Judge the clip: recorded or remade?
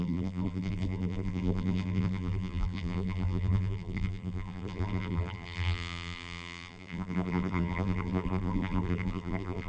remade